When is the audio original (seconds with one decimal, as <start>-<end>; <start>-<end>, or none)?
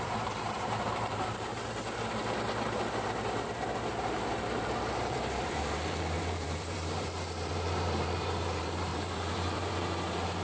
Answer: 1.5-4.0